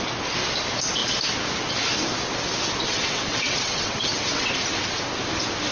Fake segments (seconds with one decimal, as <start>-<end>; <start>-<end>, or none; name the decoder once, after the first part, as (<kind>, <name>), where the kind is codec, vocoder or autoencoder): 2.9-4.6 (vocoder, WaveNeXt)